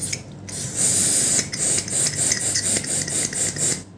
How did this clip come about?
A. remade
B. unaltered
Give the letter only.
B